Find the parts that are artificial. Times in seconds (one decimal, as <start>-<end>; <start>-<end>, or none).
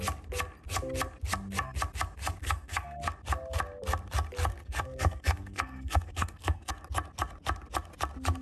2.4-3.0; 4.5-6.7